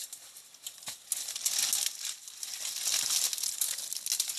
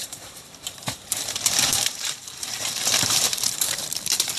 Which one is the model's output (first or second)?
second